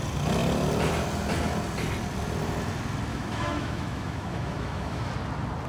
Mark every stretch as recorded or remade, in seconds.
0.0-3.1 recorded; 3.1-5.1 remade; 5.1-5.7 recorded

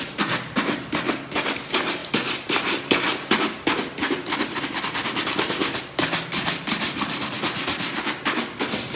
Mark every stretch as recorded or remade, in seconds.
0.0-9.0 recorded

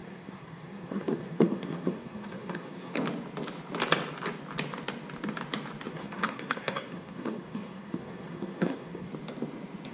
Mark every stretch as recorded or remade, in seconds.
0.0-3.0 remade; 3.0-5.9 recorded; 5.9-9.1 remade; 9.1-9.9 recorded

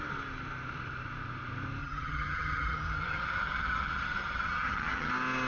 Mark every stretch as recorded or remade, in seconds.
0.0-1.8 recorded; 1.8-5.1 remade; 5.1-5.5 recorded

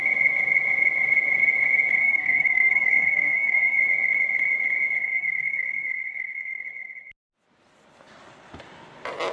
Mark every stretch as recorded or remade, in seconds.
0.0-2.0 recorded; 2.0-3.8 remade; 3.8-5.0 recorded; 5.0-6.6 remade; 6.6-9.3 recorded

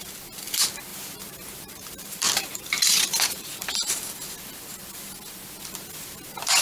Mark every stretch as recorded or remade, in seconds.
0.0-0.9 recorded; 0.9-3.7 remade; 3.7-6.6 recorded